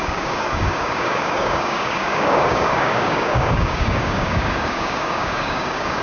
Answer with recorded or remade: remade